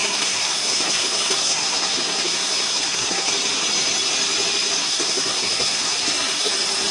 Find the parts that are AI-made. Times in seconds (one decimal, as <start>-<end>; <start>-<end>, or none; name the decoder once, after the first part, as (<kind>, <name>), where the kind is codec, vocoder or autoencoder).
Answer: 0.0-3.3 (codec, SNAC); 4.8-6.5